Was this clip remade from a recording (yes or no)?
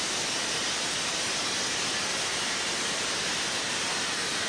no